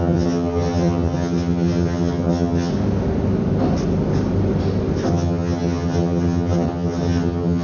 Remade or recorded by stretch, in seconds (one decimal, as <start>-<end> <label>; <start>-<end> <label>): 0.0-2.7 remade; 2.7-5.1 recorded; 5.1-7.6 remade